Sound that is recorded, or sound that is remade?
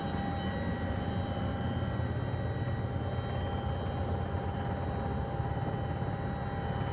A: recorded